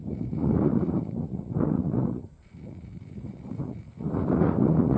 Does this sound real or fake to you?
fake